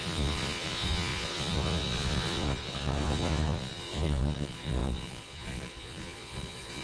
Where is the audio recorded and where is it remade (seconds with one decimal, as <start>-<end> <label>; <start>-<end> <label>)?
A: 0.0-6.8 remade